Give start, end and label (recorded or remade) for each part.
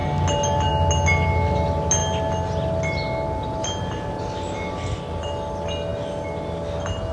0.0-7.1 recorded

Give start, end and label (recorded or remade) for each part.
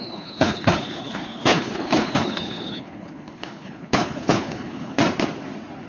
0.0-5.0 remade; 5.0-5.9 recorded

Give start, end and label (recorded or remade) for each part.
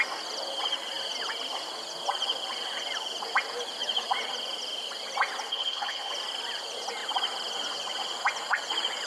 0.0-5.5 recorded; 5.5-6.1 remade; 6.1-9.1 recorded